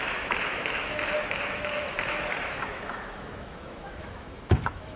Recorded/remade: remade